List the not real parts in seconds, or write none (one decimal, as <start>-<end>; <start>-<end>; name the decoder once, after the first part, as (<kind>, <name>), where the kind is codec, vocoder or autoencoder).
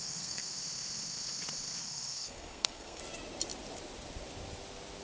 0.0-0.6 (codec, SNAC); 1.8-3.0